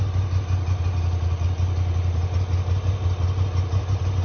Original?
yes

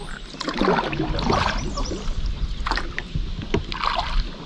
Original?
yes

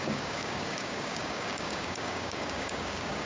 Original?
no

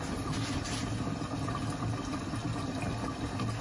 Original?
yes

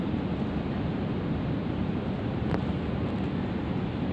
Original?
yes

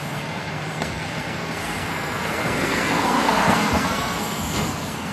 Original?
no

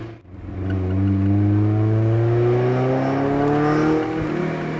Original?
yes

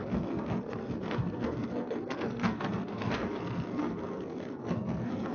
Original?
no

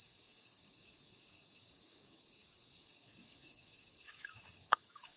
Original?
no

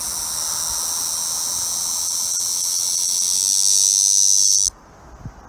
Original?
yes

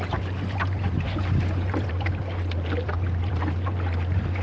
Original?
no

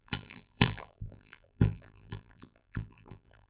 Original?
no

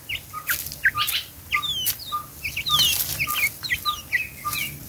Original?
yes